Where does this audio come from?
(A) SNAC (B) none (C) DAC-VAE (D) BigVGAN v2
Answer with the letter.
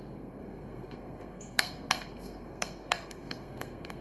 A